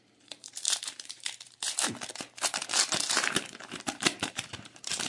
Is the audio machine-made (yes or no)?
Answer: yes